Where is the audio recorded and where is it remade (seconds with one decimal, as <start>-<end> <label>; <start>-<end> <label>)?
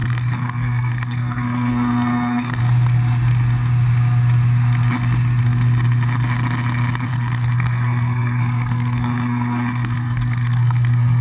0.0-2.6 remade; 2.6-7.1 recorded; 7.1-11.2 remade